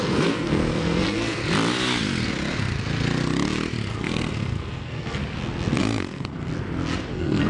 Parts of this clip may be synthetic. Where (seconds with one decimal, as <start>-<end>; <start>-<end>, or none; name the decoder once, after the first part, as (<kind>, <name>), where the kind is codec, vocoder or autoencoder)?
0.0-1.4 (codec, SNAC); 3.9-5.2; 5.8-6.5; 7.1-7.5